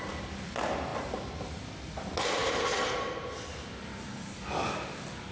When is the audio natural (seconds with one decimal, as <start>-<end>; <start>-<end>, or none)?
0.0-5.3

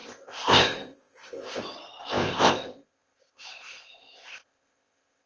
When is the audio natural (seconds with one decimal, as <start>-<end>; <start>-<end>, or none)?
1.6-2.0

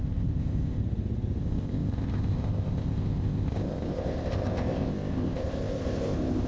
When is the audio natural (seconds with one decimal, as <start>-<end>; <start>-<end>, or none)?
0.8-1.4

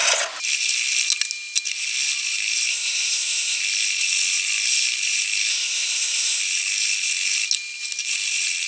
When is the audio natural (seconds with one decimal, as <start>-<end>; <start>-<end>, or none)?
0.0-2.7; 3.6-5.5; 6.4-8.7

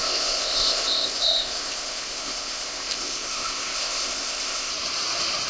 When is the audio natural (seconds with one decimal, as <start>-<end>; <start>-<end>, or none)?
4.7-5.5

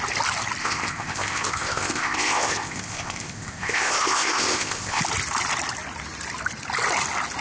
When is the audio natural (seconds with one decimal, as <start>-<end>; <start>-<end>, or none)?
0.0-0.6; 5.0-7.4